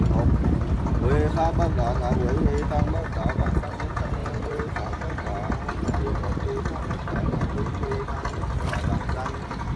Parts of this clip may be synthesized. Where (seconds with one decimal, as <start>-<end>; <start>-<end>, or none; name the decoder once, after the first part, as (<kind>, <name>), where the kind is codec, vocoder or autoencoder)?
4.2-6.0 (vocoder, BigVGAN v2)